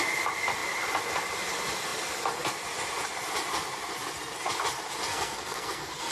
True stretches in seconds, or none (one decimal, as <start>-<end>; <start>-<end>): 0.0-5.1